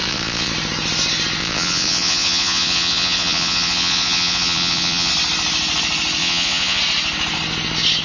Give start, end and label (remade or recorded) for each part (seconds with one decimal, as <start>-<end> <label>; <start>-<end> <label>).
0.0-0.5 remade; 0.5-1.4 recorded; 1.4-5.1 remade; 5.1-6.2 recorded; 6.2-6.8 remade; 6.8-8.0 recorded